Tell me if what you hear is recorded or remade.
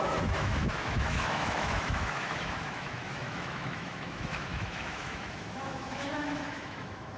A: remade